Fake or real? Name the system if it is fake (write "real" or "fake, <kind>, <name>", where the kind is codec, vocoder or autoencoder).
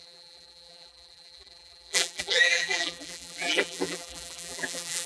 fake, vocoder, BigVGAN v2